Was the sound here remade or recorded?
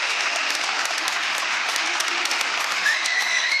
remade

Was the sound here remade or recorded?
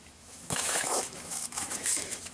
remade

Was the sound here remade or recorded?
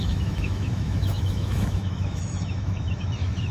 remade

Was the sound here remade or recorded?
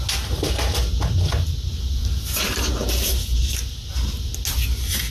recorded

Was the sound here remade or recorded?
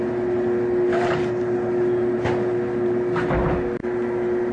recorded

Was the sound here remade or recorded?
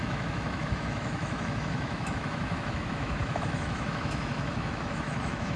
remade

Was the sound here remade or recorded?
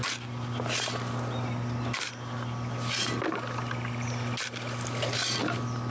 recorded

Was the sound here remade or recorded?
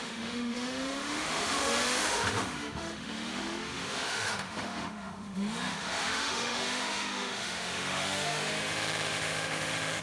remade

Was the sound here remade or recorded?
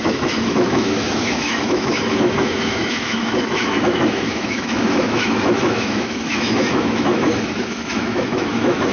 remade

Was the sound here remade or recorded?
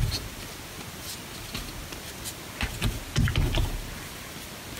recorded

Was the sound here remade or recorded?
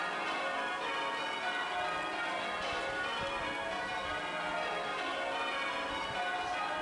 recorded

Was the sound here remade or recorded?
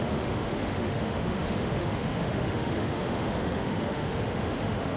remade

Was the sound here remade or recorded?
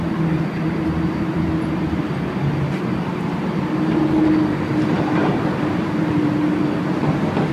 recorded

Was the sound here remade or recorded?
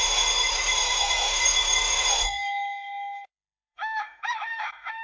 remade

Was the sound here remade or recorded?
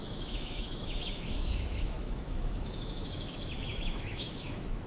remade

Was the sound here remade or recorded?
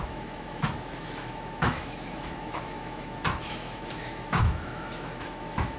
remade